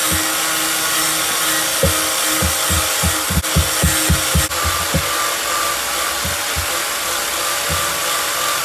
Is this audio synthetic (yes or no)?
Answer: no